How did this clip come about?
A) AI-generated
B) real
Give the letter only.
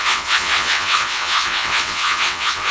A